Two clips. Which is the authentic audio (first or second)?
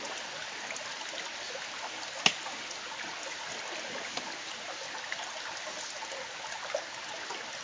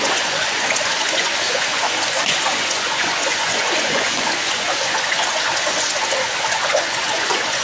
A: first